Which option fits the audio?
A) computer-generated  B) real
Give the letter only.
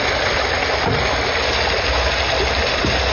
B